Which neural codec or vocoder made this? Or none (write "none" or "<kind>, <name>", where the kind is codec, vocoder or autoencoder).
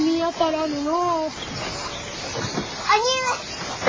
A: none